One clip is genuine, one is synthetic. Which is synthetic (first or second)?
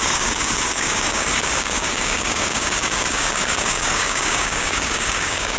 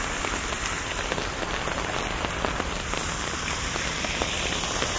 first